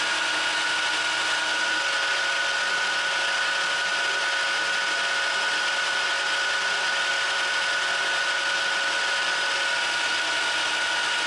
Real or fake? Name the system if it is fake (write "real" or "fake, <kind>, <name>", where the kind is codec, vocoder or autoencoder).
real